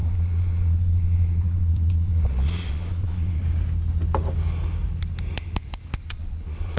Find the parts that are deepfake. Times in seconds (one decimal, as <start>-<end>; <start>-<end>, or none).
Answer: 0.0-3.4; 6.1-6.8